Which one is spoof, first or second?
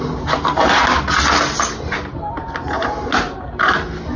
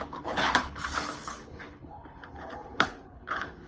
second